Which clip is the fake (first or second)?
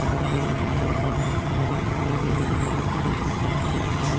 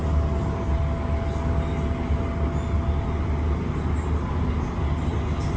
first